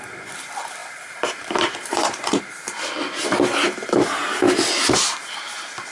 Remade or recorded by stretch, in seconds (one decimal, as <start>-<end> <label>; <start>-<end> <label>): 0.0-0.8 recorded; 0.8-2.4 remade; 2.4-3.5 recorded; 3.5-4.4 remade; 4.4-5.9 recorded